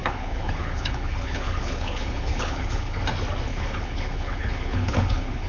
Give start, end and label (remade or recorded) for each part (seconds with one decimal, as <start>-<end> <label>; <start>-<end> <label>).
0.0-3.0 remade; 3.0-3.5 recorded; 3.5-5.5 remade